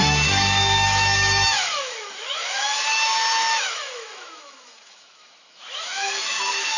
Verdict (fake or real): fake